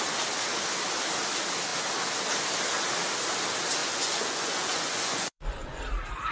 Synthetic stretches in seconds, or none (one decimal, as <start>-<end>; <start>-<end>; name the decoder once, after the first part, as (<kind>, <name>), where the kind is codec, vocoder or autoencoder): 3.8-5.8 (vocoder, Vocos)